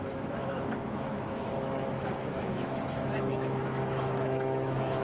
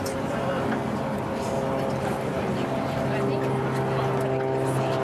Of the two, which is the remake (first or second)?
first